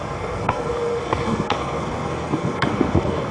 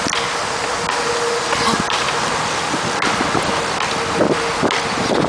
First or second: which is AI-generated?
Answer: first